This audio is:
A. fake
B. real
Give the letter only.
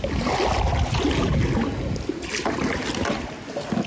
B